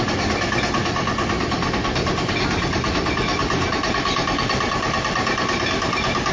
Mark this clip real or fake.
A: real